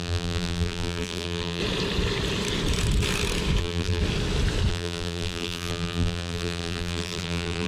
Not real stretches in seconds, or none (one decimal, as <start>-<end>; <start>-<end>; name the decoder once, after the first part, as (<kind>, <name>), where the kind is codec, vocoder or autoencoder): 0.0-1.6 (vocoder, BigVGAN v2); 3.6-4.0; 4.7-7.7